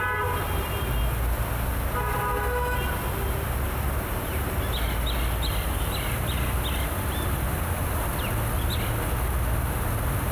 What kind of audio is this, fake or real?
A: real